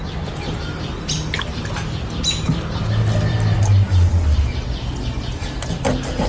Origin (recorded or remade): recorded